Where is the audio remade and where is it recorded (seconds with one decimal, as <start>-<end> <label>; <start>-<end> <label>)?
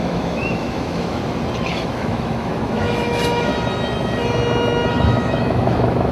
0.0-1.2 remade; 1.2-1.7 recorded; 1.7-3.5 remade; 3.5-4.9 recorded; 4.9-6.1 remade